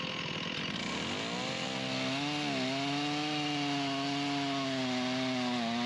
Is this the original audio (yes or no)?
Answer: yes